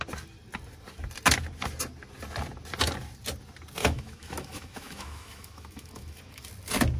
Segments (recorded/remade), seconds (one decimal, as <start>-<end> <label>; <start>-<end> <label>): 0.0-3.8 recorded; 3.8-6.5 remade; 6.5-7.0 recorded